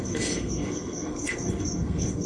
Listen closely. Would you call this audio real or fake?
fake